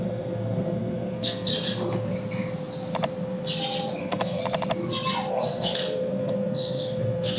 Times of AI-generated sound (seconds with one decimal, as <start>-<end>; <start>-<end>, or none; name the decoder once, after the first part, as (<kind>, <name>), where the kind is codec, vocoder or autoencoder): 0.0-1.5 (codec, SNAC); 4.0-4.4; 5.3-7.4